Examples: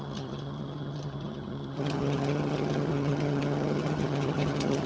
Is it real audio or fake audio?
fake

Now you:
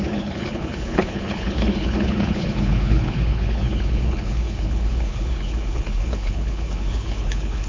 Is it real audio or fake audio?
fake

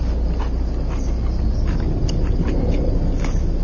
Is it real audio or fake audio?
real